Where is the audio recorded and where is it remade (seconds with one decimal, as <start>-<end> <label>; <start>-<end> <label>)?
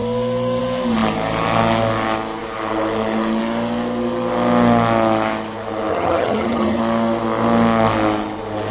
0.0-5.9 recorded; 5.9-6.8 remade; 6.8-8.7 recorded